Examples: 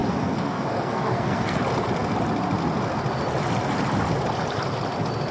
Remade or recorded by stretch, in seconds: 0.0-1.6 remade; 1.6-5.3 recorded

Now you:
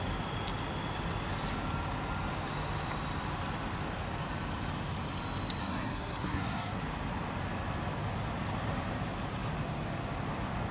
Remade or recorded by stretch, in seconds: 0.0-5.6 recorded; 5.6-6.8 remade; 6.8-10.7 recorded